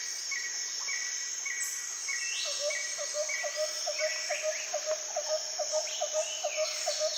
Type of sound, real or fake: real